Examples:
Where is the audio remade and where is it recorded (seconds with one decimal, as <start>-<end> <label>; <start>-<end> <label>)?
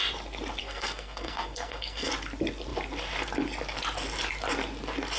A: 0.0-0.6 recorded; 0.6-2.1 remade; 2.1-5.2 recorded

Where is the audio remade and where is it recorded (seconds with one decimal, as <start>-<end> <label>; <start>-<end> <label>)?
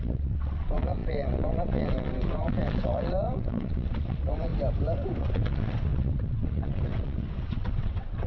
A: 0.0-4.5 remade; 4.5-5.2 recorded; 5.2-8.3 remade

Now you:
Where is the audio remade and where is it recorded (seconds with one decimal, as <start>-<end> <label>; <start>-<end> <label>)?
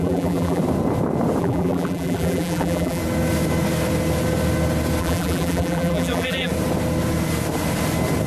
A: 0.0-0.6 remade; 0.6-1.4 recorded; 1.4-3.0 remade; 3.0-5.0 recorded; 5.0-6.5 remade; 6.5-8.3 recorded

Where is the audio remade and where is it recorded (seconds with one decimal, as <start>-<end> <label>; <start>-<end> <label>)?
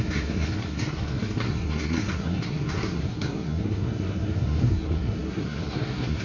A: 0.0-6.2 remade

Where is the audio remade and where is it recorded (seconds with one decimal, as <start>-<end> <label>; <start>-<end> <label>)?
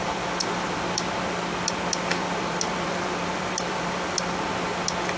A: 0.0-0.8 remade; 0.8-2.2 recorded; 2.2-4.2 remade; 4.2-5.2 recorded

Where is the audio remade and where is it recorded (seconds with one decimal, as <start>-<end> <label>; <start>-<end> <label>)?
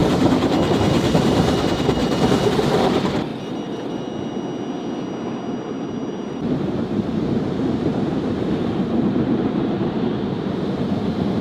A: 0.0-2.0 remade; 2.0-2.5 recorded; 2.5-3.3 remade; 3.3-5.6 recorded; 5.6-11.4 remade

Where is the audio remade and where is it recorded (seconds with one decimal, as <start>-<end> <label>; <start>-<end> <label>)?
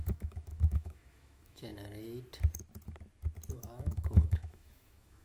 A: 0.0-1.7 remade; 1.7-3.5 recorded; 3.5-5.2 remade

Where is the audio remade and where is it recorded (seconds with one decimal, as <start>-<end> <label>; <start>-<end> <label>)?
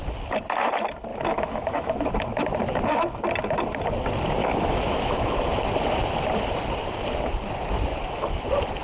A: 0.0-1.1 recorded; 1.1-1.9 remade; 1.9-4.4 recorded; 4.4-5.3 remade; 5.3-7.9 recorded; 7.9-8.4 remade; 8.4-8.8 recorded